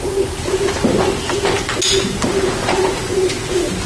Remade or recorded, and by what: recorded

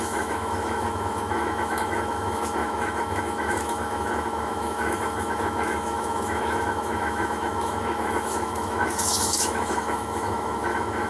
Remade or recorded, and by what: remade, autoencoder, DAC-VAE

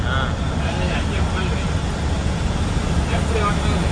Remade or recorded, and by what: recorded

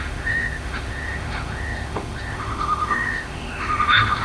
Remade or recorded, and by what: remade, autoencoder, DAC-VAE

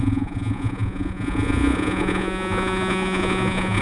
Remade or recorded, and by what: remade, vocoder, Vocos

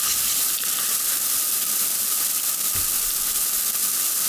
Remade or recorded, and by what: remade, vocoder, BigVGAN v2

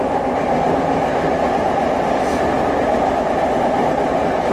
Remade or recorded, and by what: remade, vocoder, BigVGAN v2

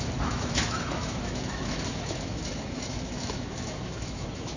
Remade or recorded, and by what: remade, autoencoder, DAC-VAE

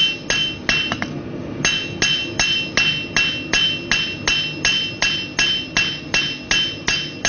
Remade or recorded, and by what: recorded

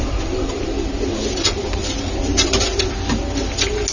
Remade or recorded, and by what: recorded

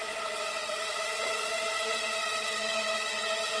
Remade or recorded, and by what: remade, vocoder, WaveNeXt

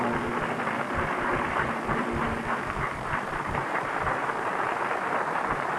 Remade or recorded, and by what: remade, vocoder, BigVGAN v2